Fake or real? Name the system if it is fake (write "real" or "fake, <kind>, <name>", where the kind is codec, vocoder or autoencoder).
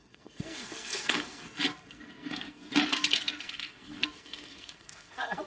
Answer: fake, codec, SNAC